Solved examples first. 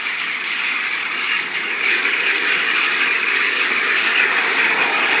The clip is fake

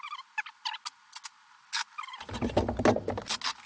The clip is real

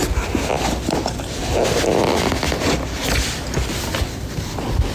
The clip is real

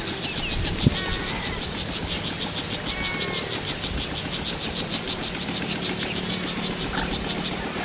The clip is real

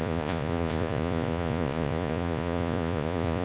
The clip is fake